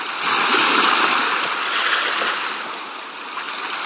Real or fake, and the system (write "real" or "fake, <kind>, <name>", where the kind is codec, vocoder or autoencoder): real